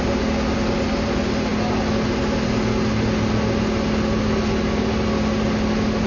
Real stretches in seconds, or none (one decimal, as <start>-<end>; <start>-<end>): 0.0-6.1